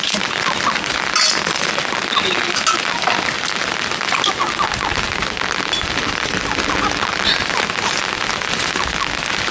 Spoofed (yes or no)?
no